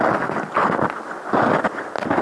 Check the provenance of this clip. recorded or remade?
recorded